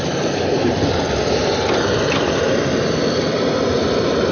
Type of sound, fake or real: real